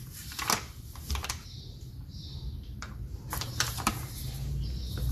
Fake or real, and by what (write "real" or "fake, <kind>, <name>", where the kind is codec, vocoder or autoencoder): fake, vocoder, BigVGAN v2